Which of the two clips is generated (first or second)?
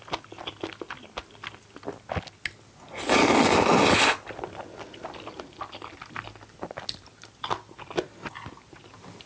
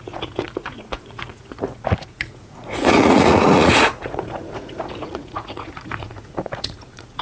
second